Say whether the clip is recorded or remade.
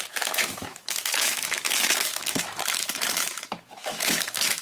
remade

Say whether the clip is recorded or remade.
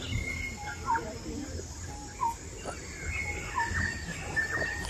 recorded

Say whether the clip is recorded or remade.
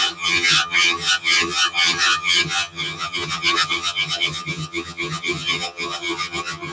remade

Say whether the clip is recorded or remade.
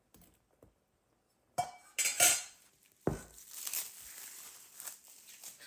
recorded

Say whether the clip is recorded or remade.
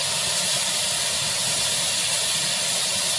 recorded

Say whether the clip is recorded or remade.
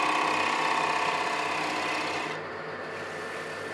recorded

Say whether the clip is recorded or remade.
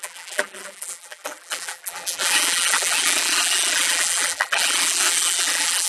remade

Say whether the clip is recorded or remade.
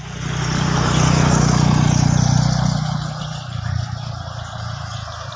recorded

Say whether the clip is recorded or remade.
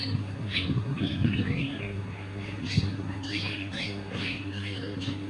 remade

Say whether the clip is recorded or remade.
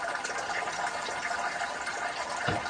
recorded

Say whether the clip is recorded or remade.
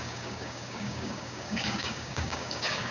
remade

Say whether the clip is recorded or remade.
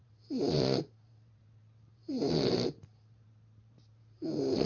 remade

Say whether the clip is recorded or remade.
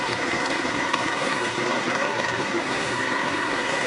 remade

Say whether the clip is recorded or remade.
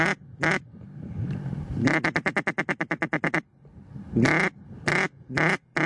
recorded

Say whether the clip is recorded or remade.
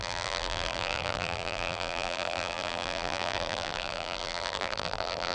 remade